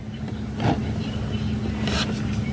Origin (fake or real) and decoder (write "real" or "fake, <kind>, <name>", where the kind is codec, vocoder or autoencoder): real